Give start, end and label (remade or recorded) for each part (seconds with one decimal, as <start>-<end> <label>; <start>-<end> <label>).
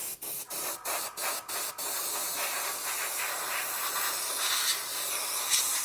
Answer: 0.0-2.2 recorded; 2.2-4.0 remade; 4.0-5.8 recorded